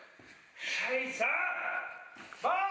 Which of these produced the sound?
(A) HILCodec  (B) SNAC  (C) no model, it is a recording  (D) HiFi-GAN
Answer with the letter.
C